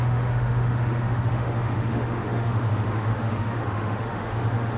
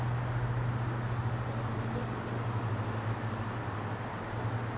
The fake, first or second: first